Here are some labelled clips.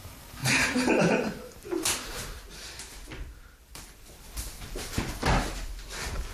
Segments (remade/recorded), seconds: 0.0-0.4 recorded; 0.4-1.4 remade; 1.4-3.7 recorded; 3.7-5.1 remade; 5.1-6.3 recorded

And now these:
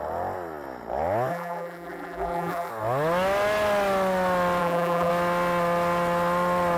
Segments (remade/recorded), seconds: 0.0-1.3 recorded; 1.3-2.7 remade; 2.7-4.6 recorded; 4.6-5.1 remade; 5.1-6.8 recorded

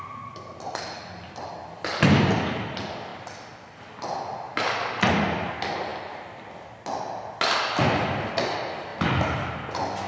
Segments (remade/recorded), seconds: 0.0-10.1 recorded

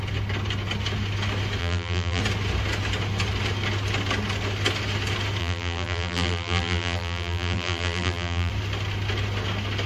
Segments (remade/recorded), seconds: 0.0-1.6 recorded; 1.6-2.2 remade; 2.2-5.4 recorded; 5.4-8.5 remade; 8.5-9.9 recorded